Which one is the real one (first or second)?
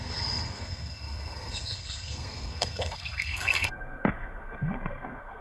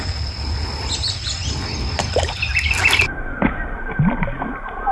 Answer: second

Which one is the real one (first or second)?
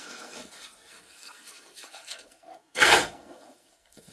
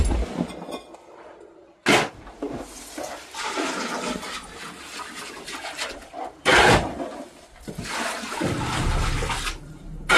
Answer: second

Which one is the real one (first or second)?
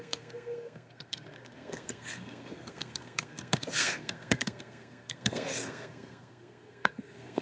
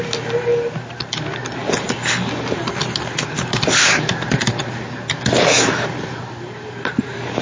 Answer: second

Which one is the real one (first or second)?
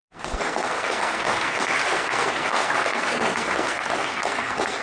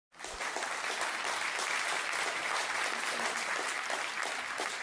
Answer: second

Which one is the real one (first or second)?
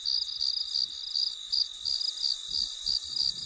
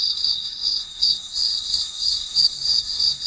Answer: first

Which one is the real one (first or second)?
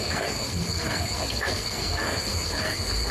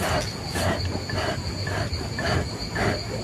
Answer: second